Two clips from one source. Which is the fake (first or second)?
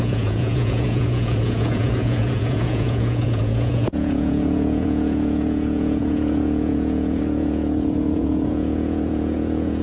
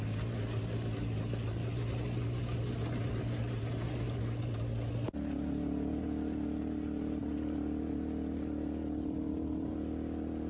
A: first